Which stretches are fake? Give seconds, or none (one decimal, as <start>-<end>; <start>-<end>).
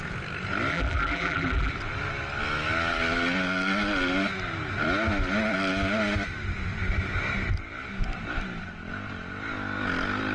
0.7-1.7